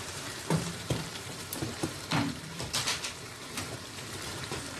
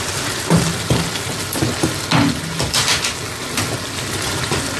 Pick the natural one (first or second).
second